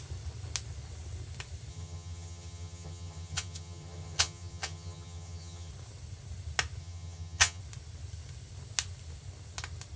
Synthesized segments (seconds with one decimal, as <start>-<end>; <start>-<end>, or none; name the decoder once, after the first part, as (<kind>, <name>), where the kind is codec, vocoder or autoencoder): 1.7-5.7 (vocoder, HiFi-GAN); 6.8-7.6